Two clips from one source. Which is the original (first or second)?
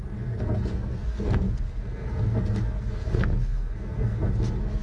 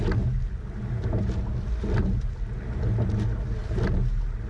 second